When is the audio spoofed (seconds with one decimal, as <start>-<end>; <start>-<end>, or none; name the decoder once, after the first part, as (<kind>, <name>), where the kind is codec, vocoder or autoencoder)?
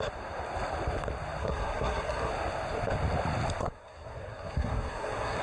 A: 1.4-2.3 (codec, SNAC); 3.6-5.4